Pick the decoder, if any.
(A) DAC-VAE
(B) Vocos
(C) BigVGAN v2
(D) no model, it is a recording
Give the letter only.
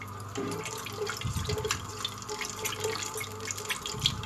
D